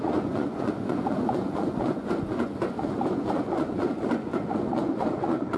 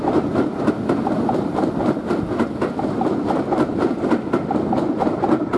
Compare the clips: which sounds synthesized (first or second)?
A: first